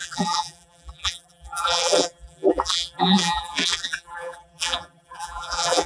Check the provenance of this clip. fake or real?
fake